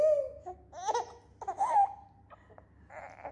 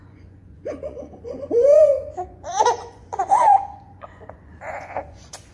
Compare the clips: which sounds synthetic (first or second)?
second